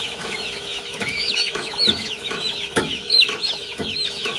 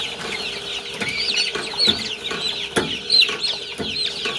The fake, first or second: first